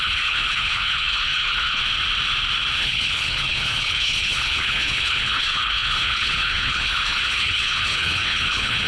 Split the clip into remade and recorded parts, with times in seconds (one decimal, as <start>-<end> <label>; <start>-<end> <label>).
0.0-1.8 remade; 1.8-2.8 recorded; 2.8-8.9 remade